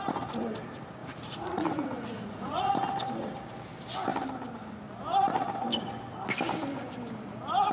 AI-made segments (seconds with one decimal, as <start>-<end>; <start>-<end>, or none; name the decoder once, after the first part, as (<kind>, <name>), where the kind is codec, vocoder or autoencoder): 1.0-2.7 (vocoder, Vocos)